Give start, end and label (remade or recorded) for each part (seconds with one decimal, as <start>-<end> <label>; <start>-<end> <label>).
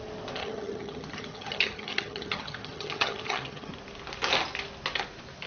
0.0-0.4 recorded; 0.4-3.7 remade; 3.7-5.5 recorded